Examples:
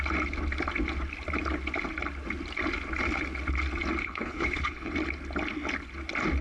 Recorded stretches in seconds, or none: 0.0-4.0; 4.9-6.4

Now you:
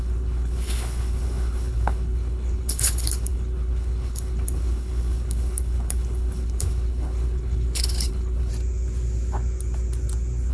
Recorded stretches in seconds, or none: 8.5-10.5

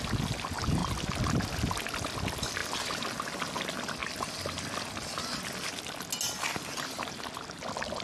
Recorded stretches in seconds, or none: 0.0-8.0

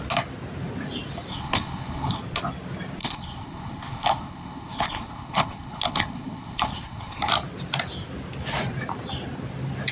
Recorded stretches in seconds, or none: 0.0-1.3; 2.2-3.0; 7.3-9.9

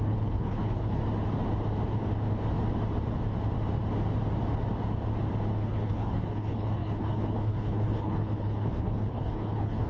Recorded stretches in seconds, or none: 1.0-5.6